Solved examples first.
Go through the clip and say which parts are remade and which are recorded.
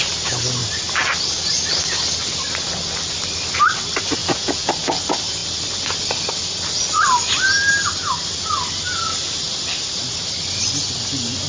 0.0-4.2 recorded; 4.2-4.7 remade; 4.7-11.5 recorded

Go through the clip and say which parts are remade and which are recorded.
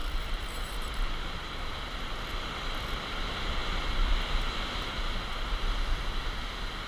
0.0-1.6 remade; 1.6-6.9 recorded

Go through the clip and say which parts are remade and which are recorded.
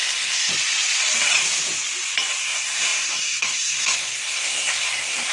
0.0-0.5 remade; 0.5-2.4 recorded; 2.4-5.3 remade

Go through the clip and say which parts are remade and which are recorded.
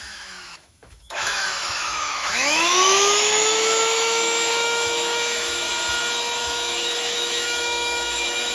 0.0-5.7 remade; 5.7-6.4 recorded; 6.4-8.5 remade